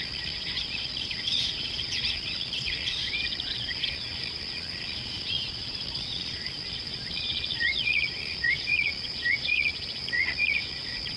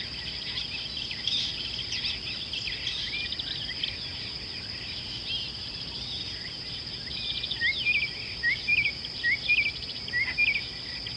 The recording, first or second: second